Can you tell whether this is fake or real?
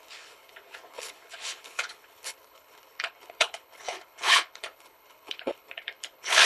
fake